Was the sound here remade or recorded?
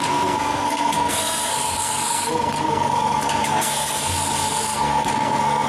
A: remade